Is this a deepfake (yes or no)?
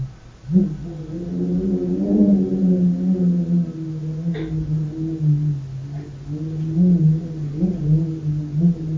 no